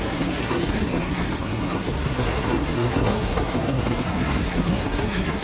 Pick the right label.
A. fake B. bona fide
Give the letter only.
A